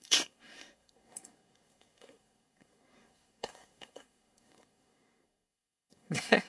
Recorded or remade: remade